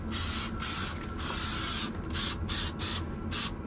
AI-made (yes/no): no